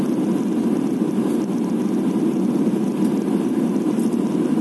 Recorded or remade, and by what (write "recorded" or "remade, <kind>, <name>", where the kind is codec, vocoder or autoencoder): recorded